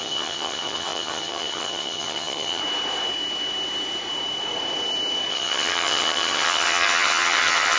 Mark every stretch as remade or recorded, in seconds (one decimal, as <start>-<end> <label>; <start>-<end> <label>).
0.0-2.6 remade; 2.6-5.3 recorded; 5.3-7.8 remade